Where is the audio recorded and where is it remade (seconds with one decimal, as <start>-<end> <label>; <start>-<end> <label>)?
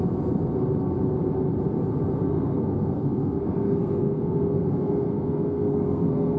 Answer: 0.0-2.3 recorded; 2.3-6.4 remade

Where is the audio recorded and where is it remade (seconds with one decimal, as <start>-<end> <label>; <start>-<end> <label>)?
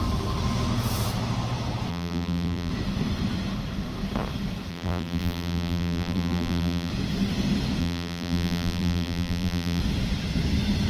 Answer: 0.0-1.9 recorded; 1.9-2.7 remade; 2.7-4.7 recorded; 4.7-6.9 remade; 6.9-7.8 recorded; 7.8-9.8 remade; 9.8-10.9 recorded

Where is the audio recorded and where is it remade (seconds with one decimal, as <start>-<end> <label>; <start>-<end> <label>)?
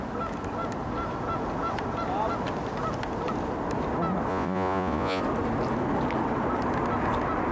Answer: 0.0-4.3 recorded; 4.3-5.2 remade; 5.2-7.5 recorded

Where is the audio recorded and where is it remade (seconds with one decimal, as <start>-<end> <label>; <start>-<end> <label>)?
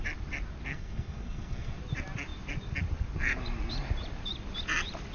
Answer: 0.0-0.7 recorded; 0.7-1.8 remade; 1.8-5.1 recorded